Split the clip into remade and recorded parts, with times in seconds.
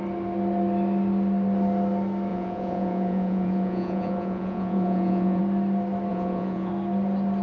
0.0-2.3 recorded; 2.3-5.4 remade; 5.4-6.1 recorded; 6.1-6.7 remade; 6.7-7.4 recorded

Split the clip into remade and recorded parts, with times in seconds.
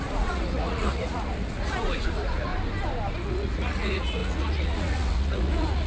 0.0-2.5 remade; 2.5-3.1 recorded; 3.1-5.9 remade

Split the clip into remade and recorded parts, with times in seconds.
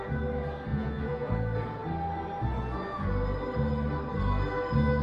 0.0-0.7 recorded; 0.7-1.3 remade; 1.3-5.0 recorded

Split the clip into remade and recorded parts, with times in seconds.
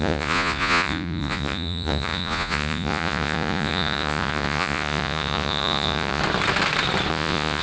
0.0-6.2 remade; 6.2-7.1 recorded; 7.1-7.6 remade